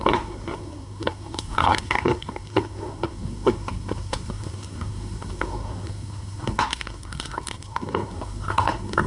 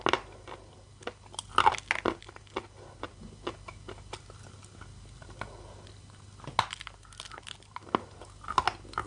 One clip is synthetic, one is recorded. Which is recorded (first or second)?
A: second